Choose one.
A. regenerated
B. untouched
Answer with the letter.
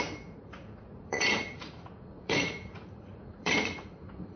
A